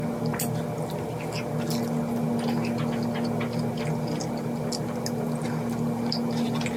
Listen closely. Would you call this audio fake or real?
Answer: real